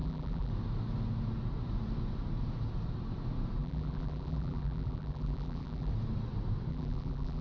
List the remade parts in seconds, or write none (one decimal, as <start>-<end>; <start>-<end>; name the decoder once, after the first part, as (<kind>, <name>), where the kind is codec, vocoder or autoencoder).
0.0-0.5 (vocoder, BigVGAN v2); 3.6-5.9; 6.7-7.4

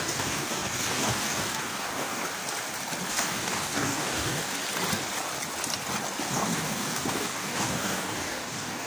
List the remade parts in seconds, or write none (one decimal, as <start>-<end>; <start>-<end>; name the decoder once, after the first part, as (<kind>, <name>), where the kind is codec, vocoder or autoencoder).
0.0-2.2 (codec, DAC); 3.1-4.6; 6.2-8.9

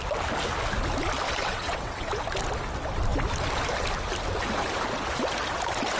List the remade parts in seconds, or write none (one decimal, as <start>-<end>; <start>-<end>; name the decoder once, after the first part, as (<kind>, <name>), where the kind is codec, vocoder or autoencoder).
1.4-2.1 (vocoder, WaveNeXt)

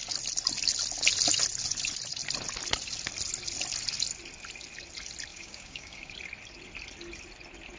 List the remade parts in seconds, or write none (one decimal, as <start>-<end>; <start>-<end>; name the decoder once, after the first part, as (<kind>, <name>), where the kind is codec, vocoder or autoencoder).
5.3-6.1 (codec, DAC)

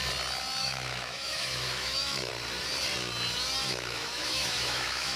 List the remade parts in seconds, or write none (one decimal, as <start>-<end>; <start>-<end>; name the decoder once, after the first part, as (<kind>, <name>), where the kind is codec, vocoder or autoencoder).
0.6-2.3 (autoencoder, DAC-VAE); 3.6-5.2

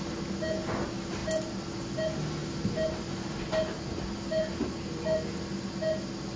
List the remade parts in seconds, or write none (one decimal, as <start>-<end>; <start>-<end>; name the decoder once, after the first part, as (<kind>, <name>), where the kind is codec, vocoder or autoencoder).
none

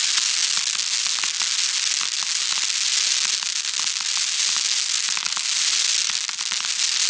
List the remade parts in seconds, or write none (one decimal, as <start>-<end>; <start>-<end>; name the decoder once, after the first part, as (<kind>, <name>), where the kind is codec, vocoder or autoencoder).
none

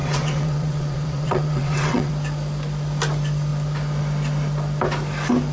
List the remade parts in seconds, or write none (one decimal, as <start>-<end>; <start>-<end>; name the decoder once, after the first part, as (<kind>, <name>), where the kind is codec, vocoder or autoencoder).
0.0-2.1 (vocoder, WaveNeXt)